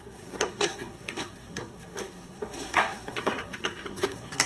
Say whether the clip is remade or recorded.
remade